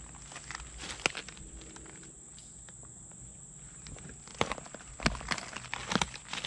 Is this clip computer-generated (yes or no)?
no